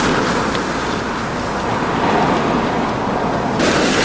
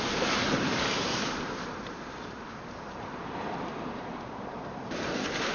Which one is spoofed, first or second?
second